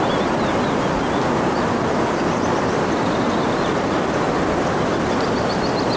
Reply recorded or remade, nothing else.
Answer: recorded